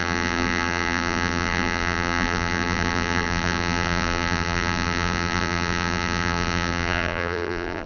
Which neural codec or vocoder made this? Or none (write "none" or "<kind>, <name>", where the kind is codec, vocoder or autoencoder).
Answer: vocoder, BigVGAN v2